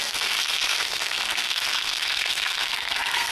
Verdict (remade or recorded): remade